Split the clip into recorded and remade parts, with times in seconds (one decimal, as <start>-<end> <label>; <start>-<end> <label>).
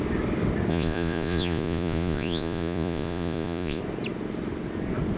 0.0-0.7 recorded; 0.7-3.8 remade; 3.8-5.2 recorded